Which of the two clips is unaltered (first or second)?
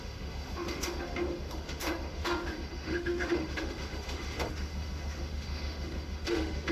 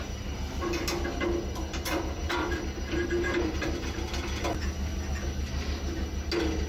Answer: second